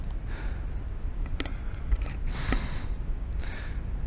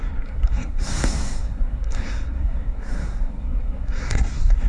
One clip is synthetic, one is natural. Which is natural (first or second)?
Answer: first